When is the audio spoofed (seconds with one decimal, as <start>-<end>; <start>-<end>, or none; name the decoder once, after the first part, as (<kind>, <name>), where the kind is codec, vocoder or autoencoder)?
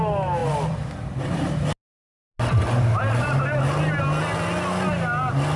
none